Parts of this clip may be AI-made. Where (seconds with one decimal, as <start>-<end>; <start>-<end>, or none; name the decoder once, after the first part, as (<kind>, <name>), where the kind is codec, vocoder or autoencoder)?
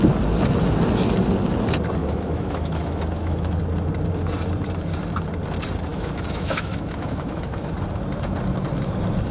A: 2.0-3.6 (autoencoder, DAC-VAE); 5.9-7.7